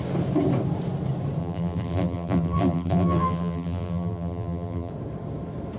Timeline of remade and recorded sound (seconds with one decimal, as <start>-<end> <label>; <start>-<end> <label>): 0.0-1.4 recorded; 1.4-4.9 remade; 4.9-5.8 recorded